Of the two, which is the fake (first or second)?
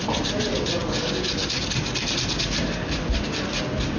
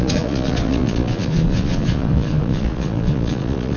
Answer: second